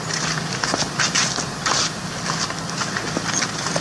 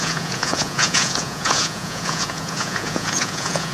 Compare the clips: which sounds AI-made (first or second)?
second